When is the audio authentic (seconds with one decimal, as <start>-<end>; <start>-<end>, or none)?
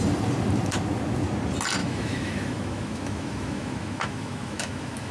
0.0-1.8